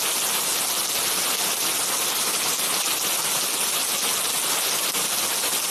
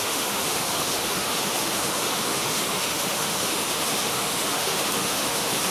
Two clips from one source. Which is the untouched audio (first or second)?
first